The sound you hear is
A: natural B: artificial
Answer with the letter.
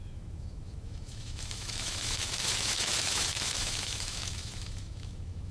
B